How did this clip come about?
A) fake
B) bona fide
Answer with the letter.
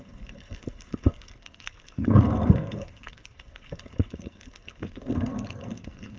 A